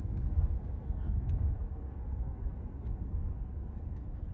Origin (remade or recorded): remade